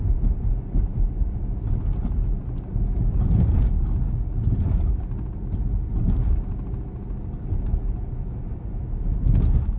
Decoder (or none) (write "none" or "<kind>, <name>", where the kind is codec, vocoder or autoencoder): none